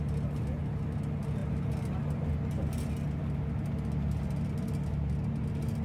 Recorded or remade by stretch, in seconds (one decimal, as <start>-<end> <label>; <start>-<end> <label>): 0.0-5.8 recorded